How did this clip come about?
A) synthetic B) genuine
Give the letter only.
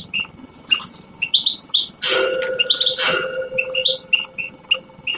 B